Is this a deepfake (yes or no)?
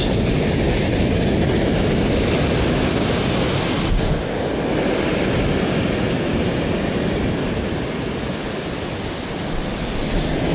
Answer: no